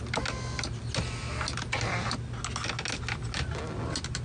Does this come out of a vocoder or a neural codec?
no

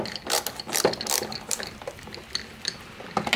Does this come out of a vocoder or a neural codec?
no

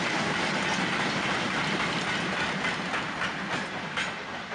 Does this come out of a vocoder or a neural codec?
no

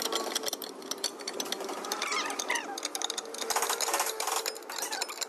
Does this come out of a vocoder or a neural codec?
yes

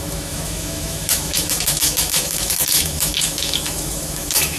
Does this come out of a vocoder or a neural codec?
yes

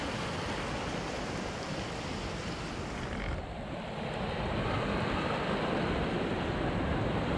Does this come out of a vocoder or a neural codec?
no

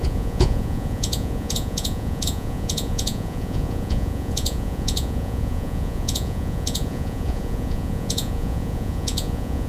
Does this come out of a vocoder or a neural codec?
yes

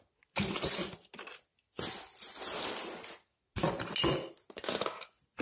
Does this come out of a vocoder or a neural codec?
no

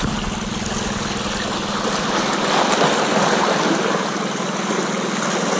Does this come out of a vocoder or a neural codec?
no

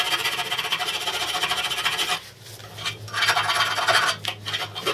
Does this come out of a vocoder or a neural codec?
no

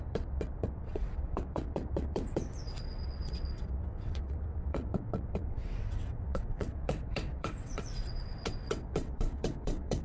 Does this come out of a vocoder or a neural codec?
yes